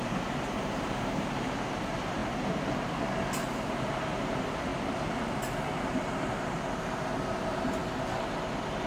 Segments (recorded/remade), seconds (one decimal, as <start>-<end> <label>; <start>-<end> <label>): 0.0-4.7 remade; 4.7-5.8 recorded; 5.8-7.8 remade; 7.8-8.9 recorded